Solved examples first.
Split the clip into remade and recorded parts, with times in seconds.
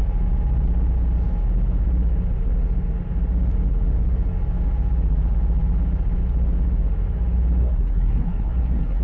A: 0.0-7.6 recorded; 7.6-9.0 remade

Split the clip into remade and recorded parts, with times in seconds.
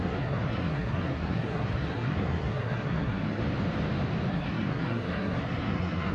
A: 0.0-3.4 remade; 3.4-4.3 recorded; 4.3-6.1 remade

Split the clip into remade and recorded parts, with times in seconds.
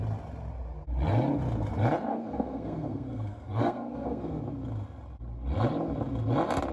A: 0.0-2.1 recorded; 2.1-4.4 remade; 4.4-6.7 recorded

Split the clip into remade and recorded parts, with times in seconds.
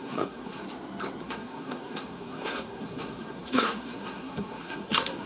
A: 0.0-0.6 remade; 0.6-1.2 recorded; 1.2-5.3 remade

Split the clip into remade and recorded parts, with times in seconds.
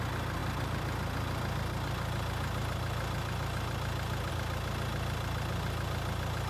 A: 0.0-6.5 recorded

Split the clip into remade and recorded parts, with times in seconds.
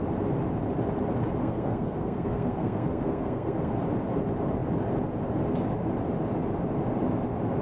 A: 0.0-1.4 recorded; 1.4-3.7 remade; 3.7-7.6 recorded